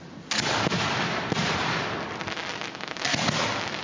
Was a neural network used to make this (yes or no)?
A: no